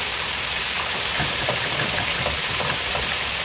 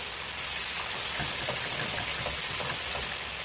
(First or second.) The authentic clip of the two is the second